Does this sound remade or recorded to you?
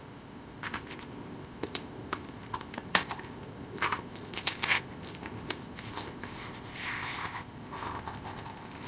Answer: remade